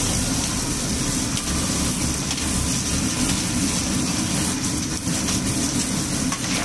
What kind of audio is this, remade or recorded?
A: recorded